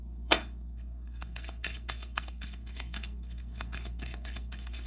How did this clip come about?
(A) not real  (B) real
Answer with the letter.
A